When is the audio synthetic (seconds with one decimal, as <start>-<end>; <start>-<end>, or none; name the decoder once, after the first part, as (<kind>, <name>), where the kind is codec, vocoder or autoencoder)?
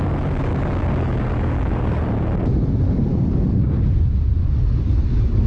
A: 0.5-2.0 (codec, DAC); 3.1-3.7; 4.4-5.5